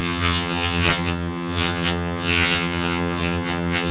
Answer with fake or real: fake